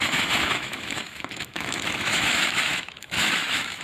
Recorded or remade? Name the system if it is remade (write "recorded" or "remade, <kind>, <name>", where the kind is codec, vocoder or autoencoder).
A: remade, autoencoder, DAC-VAE